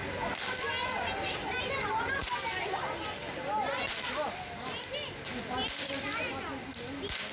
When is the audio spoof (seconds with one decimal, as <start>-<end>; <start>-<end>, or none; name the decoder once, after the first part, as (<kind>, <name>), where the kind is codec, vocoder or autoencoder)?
none